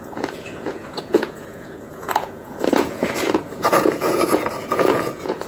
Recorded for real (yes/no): no